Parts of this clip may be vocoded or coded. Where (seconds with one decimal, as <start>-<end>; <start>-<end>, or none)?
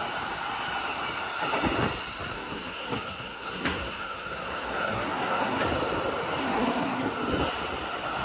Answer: 2.3-5.6; 6.4-7.1